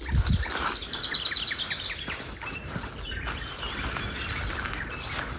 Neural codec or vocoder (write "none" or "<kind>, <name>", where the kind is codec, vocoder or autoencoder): none